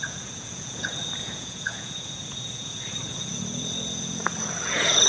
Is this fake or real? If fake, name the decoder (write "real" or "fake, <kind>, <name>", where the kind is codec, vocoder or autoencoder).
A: fake, vocoder, Vocos